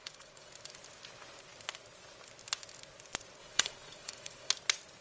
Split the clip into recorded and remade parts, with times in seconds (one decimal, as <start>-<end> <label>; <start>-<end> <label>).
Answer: 0.0-0.5 remade; 0.5-3.4 recorded; 3.4-4.5 remade; 4.5-5.0 recorded